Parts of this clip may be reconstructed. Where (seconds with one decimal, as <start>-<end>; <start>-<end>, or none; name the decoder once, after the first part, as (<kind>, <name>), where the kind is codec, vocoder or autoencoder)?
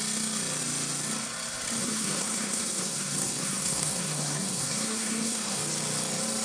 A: 1.8-5.6 (codec, SNAC)